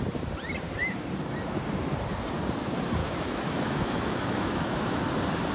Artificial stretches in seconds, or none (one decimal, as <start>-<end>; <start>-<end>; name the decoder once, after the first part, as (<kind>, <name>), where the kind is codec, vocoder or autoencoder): 3.0-5.0 (autoencoder, DAC-VAE)